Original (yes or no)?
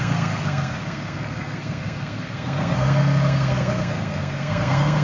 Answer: no